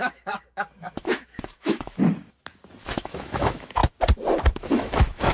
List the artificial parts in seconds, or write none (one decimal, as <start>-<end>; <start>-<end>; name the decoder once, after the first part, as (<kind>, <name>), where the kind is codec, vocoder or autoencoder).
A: 0.0-2.0 (autoencoder, DAC-VAE); 2.8-3.8; 4.5-5.3